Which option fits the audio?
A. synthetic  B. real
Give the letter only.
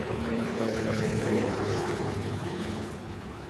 A